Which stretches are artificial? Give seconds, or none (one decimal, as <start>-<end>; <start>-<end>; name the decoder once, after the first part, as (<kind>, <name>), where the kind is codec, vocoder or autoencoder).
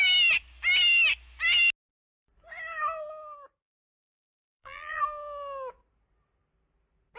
4.0-5.0 (vocoder, BigVGAN v2)